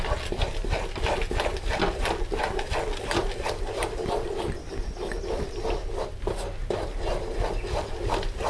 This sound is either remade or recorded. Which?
recorded